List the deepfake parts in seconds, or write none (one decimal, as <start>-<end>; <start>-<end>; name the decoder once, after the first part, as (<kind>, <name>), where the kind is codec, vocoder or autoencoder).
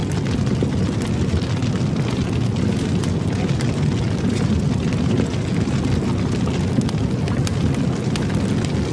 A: none